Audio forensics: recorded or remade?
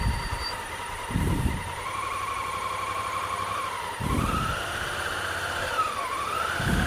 remade